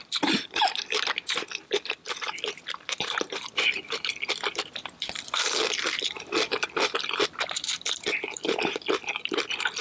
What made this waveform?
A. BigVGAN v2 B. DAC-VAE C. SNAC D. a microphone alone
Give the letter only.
A